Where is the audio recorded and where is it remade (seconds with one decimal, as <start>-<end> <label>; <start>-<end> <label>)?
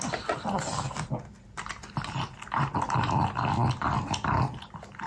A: 0.0-5.1 recorded